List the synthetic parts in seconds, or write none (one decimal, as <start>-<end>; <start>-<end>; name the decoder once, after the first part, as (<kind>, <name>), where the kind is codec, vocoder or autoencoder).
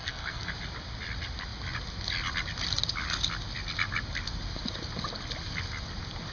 0.0-0.5 (codec, SNAC)